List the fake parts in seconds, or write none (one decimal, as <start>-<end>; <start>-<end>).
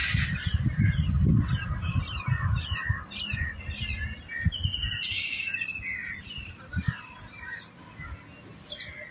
0.0-0.6; 6.0-7.6